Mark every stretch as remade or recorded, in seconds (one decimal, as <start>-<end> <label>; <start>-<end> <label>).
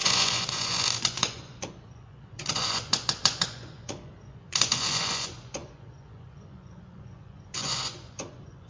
0.0-8.7 remade